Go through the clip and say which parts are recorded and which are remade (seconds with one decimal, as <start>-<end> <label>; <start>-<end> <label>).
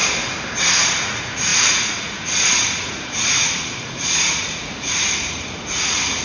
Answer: 0.0-0.6 recorded; 0.6-6.2 remade